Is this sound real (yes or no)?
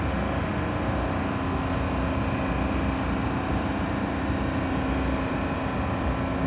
yes